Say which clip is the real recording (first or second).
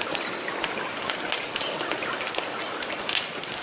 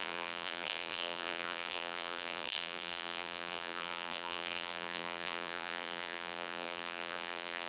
first